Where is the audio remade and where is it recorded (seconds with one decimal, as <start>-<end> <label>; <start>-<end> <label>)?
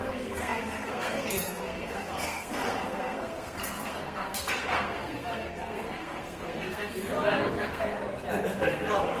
0.0-7.9 remade; 7.9-8.6 recorded; 8.6-9.2 remade